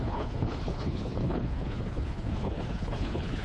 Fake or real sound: fake